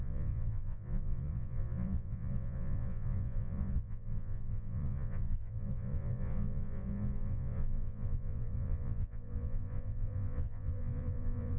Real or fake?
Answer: fake